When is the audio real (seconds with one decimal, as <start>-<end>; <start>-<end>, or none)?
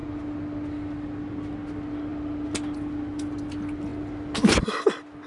0.0-5.3